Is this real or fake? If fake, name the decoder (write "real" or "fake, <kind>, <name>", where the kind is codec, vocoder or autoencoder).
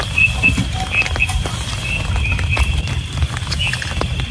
real